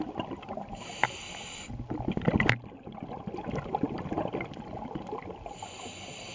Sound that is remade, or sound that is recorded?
recorded